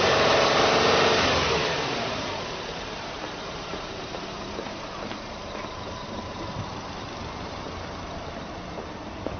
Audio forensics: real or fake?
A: fake